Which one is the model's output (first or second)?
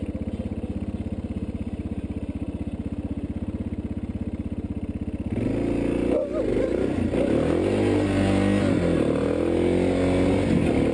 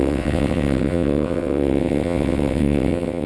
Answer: second